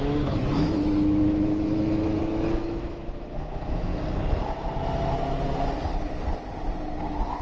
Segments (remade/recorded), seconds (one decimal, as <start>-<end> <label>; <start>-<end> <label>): 0.0-3.9 remade; 3.9-7.4 recorded